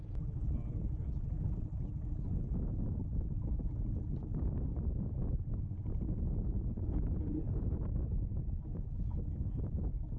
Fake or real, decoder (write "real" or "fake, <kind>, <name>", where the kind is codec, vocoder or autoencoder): real